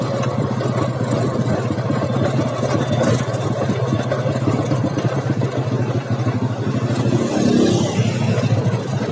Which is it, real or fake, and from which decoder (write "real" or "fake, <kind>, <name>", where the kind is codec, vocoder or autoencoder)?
real